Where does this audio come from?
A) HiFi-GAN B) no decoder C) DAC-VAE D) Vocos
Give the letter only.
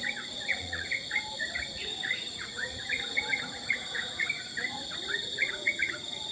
D